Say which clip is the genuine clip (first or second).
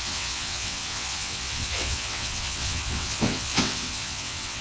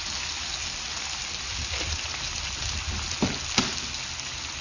second